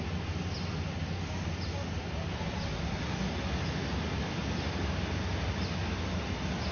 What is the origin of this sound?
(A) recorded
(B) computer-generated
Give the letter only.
A